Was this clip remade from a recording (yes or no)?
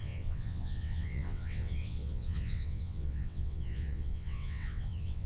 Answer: yes